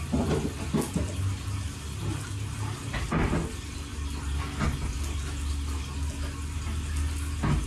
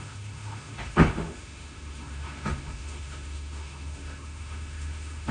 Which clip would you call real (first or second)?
first